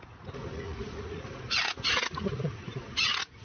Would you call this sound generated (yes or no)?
yes